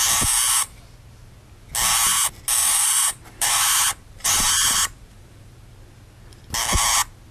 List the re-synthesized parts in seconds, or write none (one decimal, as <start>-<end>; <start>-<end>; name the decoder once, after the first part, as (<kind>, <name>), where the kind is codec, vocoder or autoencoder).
2.6-5.5 (vocoder, BigVGAN v2)